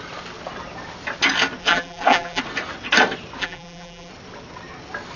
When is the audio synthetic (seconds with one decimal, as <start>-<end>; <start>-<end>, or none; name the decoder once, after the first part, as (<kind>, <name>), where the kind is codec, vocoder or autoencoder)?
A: 1.6-2.4 (vocoder, BigVGAN v2); 3.4-4.1